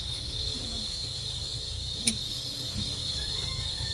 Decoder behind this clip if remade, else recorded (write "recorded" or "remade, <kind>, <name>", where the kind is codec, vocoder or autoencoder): remade, codec, DAC